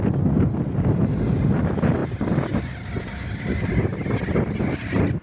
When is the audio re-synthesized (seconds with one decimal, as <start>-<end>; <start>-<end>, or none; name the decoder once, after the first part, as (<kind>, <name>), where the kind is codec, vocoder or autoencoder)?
none